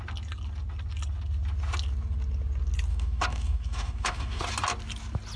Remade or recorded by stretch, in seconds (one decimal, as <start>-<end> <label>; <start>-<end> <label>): 0.0-2.9 recorded; 2.9-4.4 remade; 4.4-5.4 recorded

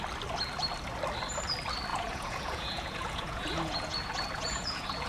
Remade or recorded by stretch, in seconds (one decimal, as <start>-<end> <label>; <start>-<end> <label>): 0.0-1.9 recorded; 1.9-5.1 remade

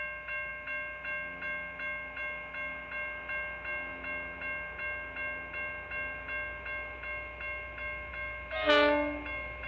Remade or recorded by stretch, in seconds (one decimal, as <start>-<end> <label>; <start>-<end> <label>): 0.0-9.7 recorded

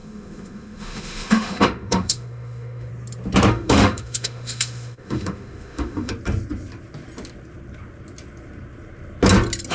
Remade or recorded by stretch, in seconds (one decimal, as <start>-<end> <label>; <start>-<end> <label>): 0.0-2.9 remade; 2.9-3.5 recorded; 3.5-6.1 remade; 6.1-9.7 recorded

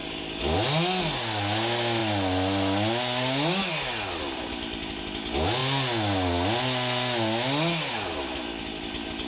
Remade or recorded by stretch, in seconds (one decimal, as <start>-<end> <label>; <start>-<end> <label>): 0.0-9.3 recorded

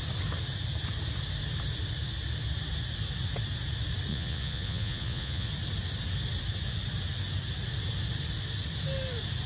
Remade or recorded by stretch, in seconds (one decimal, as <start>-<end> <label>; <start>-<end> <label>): 0.0-4.1 recorded; 4.1-5.5 remade; 5.5-9.5 recorded